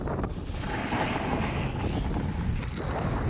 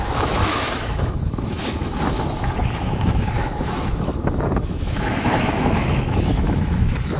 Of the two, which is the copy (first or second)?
second